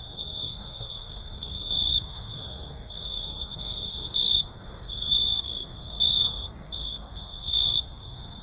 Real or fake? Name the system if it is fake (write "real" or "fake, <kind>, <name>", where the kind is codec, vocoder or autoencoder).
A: fake, codec, SNAC